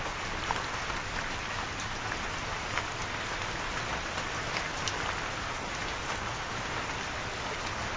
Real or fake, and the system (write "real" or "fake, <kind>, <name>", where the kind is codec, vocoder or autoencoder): real